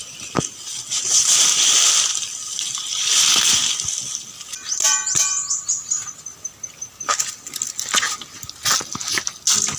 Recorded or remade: recorded